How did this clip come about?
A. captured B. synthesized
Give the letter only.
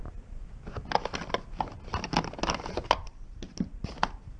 A